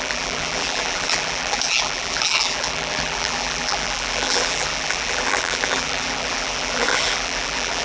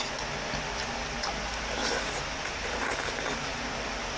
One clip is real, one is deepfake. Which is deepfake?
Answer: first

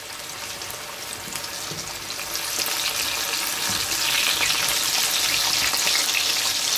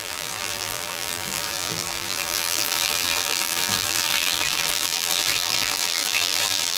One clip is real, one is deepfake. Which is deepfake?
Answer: second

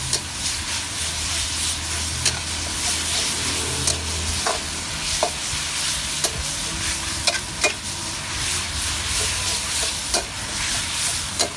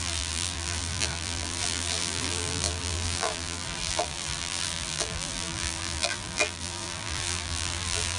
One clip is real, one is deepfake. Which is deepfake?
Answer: second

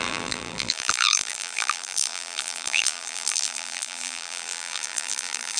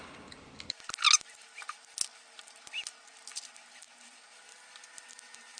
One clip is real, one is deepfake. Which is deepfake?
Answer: first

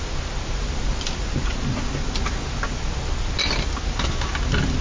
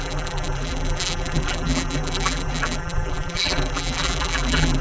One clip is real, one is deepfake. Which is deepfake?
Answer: second